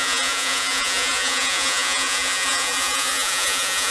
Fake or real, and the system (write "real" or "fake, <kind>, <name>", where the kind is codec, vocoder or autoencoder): fake, vocoder, Vocos